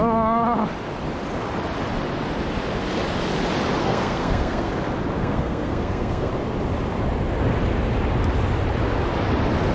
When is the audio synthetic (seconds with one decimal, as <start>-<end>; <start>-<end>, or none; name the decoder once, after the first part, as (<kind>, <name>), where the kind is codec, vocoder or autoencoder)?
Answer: 3.8-4.7 (codec, SNAC); 5.2-6.3